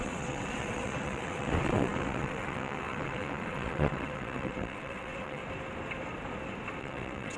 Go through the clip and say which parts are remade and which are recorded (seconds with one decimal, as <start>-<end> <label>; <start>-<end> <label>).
0.0-5.4 remade; 5.4-6.8 recorded; 6.8-7.4 remade